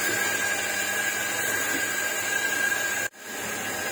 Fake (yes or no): no